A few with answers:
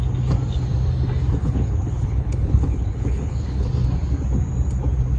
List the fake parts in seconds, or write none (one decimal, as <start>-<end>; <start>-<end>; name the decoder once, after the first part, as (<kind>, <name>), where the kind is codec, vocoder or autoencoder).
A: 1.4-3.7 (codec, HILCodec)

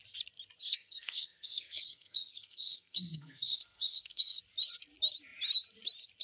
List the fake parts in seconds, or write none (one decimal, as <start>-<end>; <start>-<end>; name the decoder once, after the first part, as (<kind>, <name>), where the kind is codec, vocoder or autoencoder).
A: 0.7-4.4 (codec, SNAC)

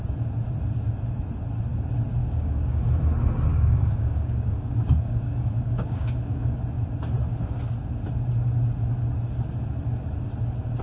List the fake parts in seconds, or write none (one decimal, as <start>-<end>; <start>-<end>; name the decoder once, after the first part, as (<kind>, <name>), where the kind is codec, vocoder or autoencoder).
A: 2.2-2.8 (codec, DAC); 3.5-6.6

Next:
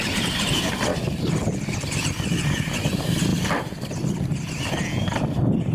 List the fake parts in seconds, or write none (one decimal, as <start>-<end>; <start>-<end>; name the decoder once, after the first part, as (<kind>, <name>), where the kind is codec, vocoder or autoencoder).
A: 0.0-0.9 (vocoder, BigVGAN v2); 2.8-4.3; 5.0-5.7

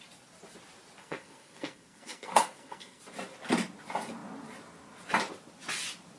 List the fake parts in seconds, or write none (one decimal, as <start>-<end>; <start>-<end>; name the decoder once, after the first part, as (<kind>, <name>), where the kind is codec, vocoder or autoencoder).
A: 1.0-3.0 (codec, SNAC)

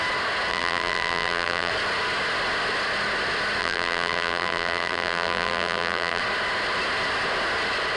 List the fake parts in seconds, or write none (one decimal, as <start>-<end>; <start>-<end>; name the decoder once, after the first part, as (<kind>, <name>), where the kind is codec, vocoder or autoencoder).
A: 0.5-1.7 (vocoder, BigVGAN v2); 3.6-6.2